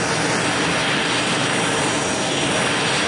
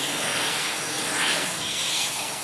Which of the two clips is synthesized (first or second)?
second